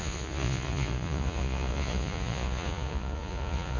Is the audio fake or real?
fake